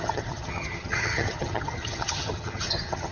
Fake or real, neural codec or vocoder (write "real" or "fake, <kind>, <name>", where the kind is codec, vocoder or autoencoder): fake, vocoder, HiFi-GAN